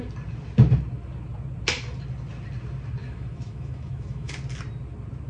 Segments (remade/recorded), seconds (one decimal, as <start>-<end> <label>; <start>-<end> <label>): 0.0-3.0 recorded; 3.0-4.3 remade; 4.3-5.3 recorded